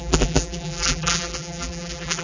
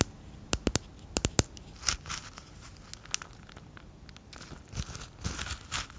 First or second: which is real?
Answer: second